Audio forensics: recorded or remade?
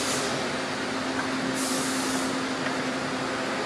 recorded